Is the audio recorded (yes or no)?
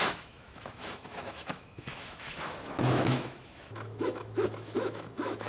no